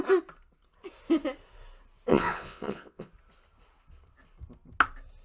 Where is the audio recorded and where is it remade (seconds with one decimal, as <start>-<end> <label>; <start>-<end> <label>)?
0.0-2.1 recorded; 2.1-3.1 remade; 3.1-5.2 recorded